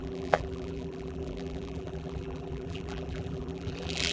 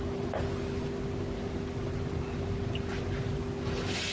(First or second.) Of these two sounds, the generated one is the first